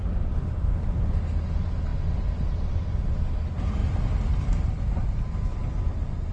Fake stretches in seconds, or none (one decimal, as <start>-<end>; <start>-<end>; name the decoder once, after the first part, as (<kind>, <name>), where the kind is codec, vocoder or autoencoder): none